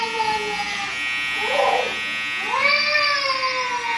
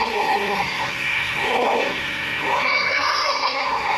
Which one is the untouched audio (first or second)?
first